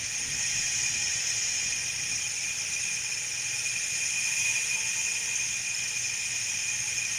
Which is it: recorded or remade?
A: recorded